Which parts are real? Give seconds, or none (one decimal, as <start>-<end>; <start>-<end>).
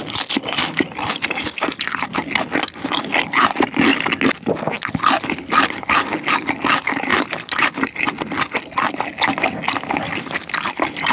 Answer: 0.0-11.1